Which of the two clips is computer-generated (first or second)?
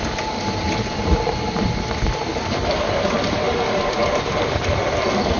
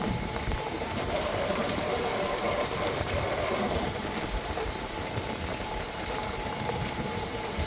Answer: second